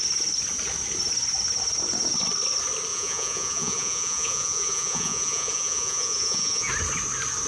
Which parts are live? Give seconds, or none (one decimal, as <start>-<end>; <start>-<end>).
0.0-2.9; 6.7-7.5